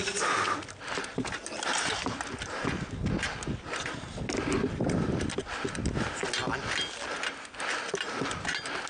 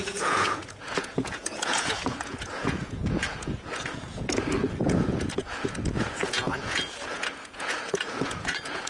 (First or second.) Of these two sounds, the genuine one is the first